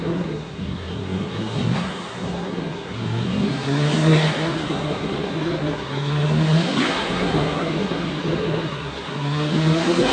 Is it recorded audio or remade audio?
remade